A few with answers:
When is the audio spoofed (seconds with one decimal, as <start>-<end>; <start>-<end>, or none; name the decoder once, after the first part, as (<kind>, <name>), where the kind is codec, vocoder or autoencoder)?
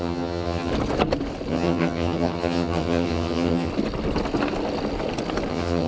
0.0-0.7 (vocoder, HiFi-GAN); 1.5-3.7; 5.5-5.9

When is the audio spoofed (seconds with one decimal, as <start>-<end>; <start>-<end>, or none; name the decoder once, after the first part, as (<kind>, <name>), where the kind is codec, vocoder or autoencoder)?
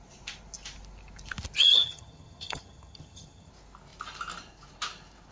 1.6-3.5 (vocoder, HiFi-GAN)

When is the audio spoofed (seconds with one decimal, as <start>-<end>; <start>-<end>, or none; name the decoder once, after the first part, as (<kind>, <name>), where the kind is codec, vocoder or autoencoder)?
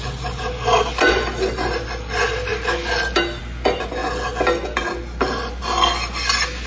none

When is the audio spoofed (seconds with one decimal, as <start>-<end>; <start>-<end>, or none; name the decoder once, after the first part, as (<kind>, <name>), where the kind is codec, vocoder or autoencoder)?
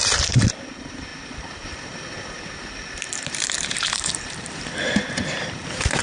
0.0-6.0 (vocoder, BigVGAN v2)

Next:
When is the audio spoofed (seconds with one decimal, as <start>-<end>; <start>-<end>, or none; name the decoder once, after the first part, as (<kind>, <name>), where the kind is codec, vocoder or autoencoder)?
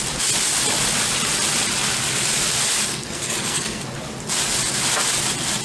2.9-3.8 (codec, SNAC)